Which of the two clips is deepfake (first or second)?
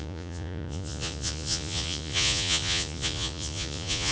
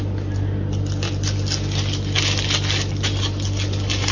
first